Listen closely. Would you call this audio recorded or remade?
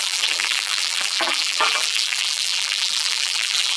remade